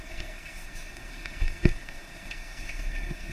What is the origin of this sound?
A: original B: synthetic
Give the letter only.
B